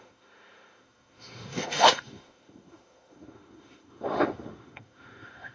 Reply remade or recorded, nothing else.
remade